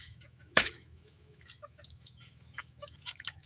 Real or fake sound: fake